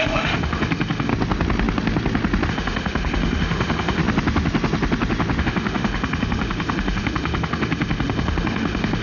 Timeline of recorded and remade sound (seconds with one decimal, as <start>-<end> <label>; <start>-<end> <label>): 0.0-1.1 remade; 1.1-2.5 recorded; 2.5-4.0 remade; 4.0-5.4 recorded; 5.4-9.0 remade